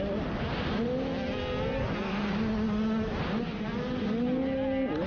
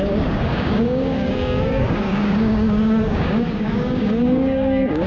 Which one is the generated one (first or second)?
second